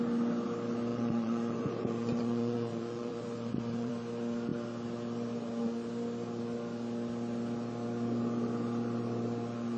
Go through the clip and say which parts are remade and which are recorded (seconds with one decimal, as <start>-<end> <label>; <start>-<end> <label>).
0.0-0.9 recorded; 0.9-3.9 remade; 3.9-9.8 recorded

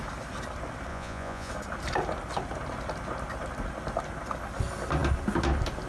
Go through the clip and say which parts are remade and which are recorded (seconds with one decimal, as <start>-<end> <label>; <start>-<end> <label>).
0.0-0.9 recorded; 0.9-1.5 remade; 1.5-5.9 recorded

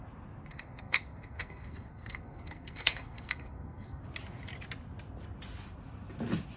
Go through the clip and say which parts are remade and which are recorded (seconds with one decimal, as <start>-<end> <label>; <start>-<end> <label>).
0.0-0.5 recorded; 0.5-4.0 remade; 4.0-6.6 recorded

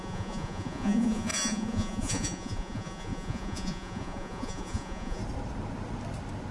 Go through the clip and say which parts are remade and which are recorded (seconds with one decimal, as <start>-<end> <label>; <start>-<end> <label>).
0.0-5.2 remade; 5.2-6.5 recorded